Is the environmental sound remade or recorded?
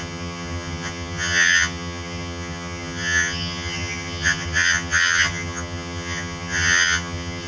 remade